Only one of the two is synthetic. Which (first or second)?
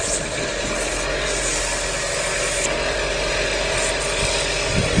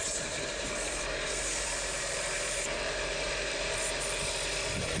second